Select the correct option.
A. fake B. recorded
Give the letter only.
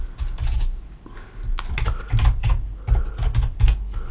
B